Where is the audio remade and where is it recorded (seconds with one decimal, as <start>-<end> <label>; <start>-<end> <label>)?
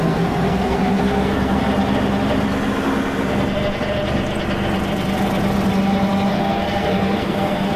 0.0-1.6 remade; 1.6-6.3 recorded; 6.3-7.8 remade